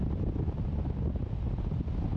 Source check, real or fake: real